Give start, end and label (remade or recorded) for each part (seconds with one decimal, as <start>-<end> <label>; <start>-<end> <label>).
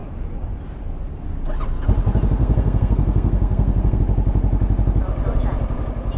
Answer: 0.0-2.4 recorded; 2.4-4.0 remade; 4.0-6.2 recorded